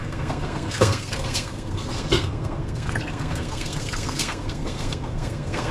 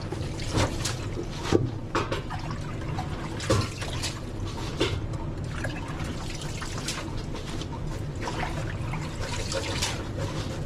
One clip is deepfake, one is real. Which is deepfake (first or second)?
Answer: first